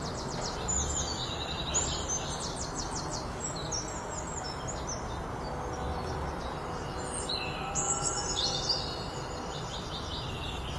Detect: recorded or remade recorded